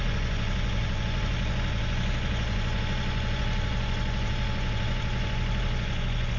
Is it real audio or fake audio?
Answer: fake